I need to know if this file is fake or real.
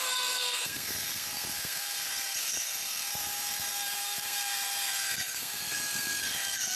fake